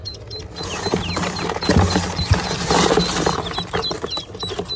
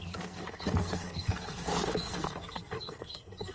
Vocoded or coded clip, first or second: second